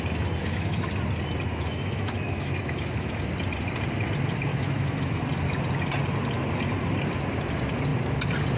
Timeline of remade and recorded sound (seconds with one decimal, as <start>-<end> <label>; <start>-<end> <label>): 0.0-0.4 recorded; 0.4-0.9 remade; 0.9-1.5 recorded; 1.5-3.2 remade; 3.2-4.5 recorded; 4.5-5.2 remade; 5.2-8.6 recorded